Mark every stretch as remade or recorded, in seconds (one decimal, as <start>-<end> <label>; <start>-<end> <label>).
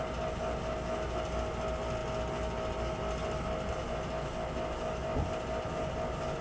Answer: 0.0-6.4 recorded